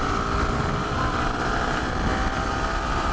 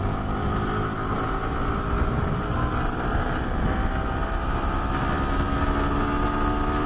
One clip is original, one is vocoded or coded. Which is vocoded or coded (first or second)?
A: first